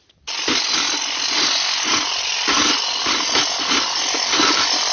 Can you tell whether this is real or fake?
real